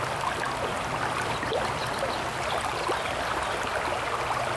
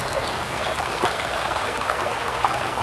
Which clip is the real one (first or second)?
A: first